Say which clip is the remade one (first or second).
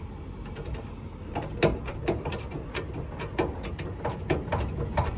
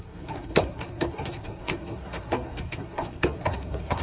second